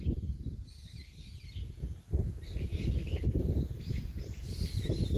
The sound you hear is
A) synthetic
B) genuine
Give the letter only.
A